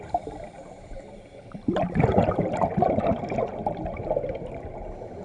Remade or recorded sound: recorded